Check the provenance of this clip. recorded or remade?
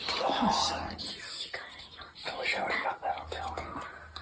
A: recorded